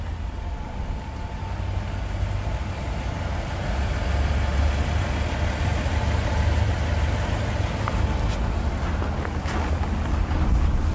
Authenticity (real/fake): real